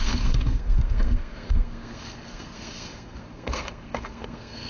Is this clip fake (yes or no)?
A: yes